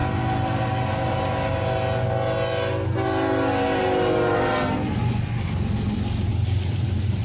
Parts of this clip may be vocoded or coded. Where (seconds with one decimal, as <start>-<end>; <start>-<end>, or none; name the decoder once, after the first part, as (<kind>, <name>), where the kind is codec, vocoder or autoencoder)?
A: 6.3-7.2 (vocoder, BigVGAN v2)